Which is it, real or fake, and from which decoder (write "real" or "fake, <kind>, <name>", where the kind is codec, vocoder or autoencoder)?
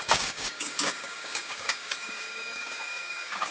fake, codec, DAC